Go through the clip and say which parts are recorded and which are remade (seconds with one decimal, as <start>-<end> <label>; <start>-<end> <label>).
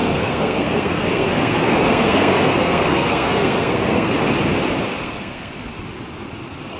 0.0-4.1 remade; 4.1-5.0 recorded; 5.0-5.8 remade; 5.8-6.8 recorded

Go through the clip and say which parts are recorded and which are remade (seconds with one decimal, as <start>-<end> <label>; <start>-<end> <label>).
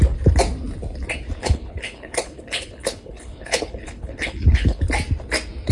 0.0-1.4 recorded; 1.4-4.8 remade; 4.8-5.7 recorded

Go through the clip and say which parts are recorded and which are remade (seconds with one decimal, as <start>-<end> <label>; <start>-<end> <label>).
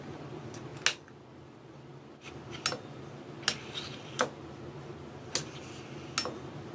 0.0-6.7 recorded